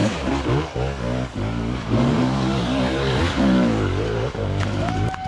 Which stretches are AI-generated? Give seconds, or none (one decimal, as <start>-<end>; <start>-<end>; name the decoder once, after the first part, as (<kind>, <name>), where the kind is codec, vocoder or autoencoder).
0.0-5.3 (codec, DAC)

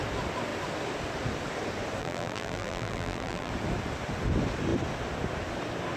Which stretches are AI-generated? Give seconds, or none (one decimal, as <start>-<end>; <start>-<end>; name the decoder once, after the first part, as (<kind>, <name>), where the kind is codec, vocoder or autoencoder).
2.0-3.5 (vocoder, BigVGAN v2)